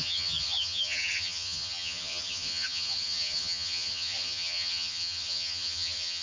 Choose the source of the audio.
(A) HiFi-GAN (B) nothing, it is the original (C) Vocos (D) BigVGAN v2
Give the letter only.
A